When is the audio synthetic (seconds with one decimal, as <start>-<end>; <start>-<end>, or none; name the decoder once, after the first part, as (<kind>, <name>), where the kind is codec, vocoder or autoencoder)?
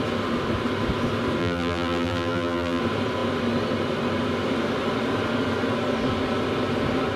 1.4-2.8 (vocoder, BigVGAN v2)